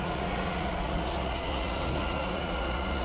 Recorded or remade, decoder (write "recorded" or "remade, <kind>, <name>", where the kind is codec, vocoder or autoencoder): remade, vocoder, Vocos